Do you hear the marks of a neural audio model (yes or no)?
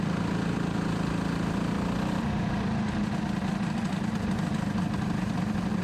no